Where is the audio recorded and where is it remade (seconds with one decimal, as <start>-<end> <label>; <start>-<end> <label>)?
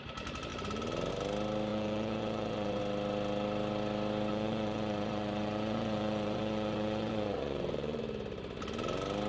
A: 0.0-1.7 recorded; 1.7-2.8 remade; 2.8-4.3 recorded; 4.3-8.0 remade; 8.0-9.3 recorded